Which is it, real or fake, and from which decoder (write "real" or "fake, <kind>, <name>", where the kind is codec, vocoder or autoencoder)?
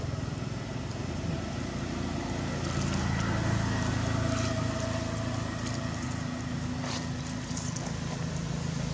real